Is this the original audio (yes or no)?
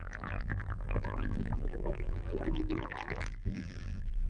no